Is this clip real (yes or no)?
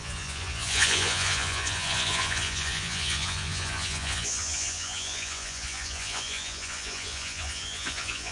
no